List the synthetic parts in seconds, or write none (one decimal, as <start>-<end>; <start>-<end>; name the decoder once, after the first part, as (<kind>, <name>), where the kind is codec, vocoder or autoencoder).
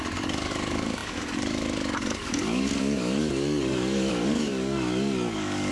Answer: 0.0-5.7 (codec, DAC)